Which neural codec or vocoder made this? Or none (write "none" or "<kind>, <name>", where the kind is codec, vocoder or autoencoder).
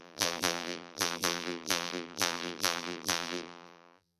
vocoder, BigVGAN v2